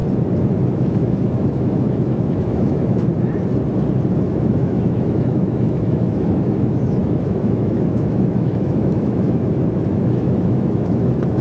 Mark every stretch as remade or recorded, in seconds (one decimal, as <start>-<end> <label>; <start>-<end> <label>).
0.0-0.7 recorded; 0.7-3.1 remade; 3.1-4.2 recorded; 4.2-11.4 remade